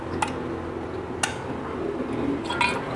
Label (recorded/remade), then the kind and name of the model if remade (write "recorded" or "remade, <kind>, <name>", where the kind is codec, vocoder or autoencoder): recorded